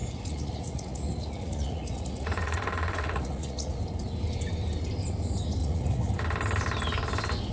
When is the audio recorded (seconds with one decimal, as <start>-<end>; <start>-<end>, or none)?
3.8-5.6; 6.1-7.5